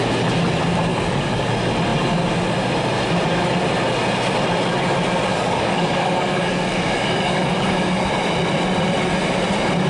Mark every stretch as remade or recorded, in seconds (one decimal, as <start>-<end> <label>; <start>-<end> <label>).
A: 0.0-0.9 recorded; 0.9-1.5 remade; 1.5-5.3 recorded; 5.3-8.0 remade; 8.0-9.9 recorded